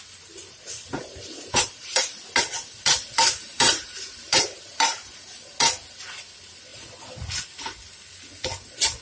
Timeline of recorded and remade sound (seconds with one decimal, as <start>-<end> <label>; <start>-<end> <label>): 0.0-1.0 recorded; 1.0-2.2 remade; 2.2-3.4 recorded; 3.4-5.5 remade; 5.5-9.0 recorded